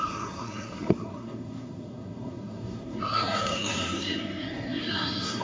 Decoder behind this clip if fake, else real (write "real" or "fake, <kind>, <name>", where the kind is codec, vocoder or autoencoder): fake, codec, SNAC